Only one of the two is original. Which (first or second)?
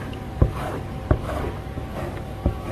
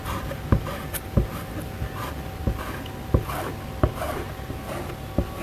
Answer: second